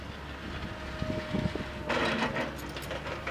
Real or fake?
real